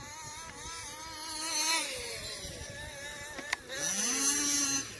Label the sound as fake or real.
real